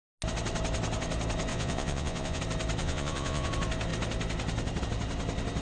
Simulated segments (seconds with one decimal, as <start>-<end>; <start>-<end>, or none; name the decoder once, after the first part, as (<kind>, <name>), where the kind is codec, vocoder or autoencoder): 1.5-2.4 (vocoder, Vocos); 2.8-3.5

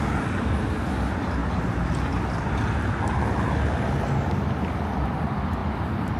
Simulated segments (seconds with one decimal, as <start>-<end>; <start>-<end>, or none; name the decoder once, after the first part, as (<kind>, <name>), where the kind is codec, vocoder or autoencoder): none

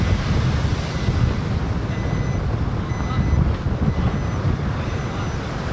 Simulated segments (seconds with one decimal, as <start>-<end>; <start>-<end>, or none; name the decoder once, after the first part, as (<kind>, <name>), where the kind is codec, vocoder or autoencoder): none

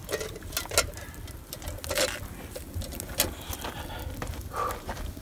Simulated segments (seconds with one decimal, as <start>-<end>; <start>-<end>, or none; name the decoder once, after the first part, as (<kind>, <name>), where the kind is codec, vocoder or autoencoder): none

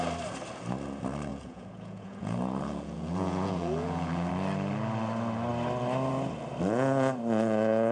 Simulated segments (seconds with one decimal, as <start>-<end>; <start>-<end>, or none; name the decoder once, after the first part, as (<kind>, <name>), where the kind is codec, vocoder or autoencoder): 1.3-4.3 (vocoder, Vocos)

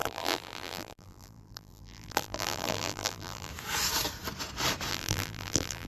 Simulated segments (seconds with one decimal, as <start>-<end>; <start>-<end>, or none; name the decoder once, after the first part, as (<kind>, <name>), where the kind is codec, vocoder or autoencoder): 0.0-3.5 (vocoder, BigVGAN v2); 4.9-5.9